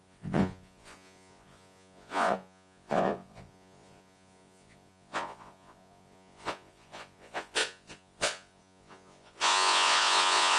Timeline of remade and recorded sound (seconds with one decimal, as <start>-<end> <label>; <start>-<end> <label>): 0.0-10.6 remade